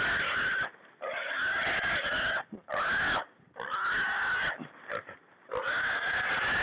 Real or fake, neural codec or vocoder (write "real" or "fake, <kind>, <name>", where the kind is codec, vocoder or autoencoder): real